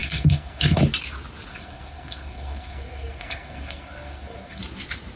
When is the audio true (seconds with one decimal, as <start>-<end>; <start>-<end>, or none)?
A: 0.8-1.5; 4.6-5.2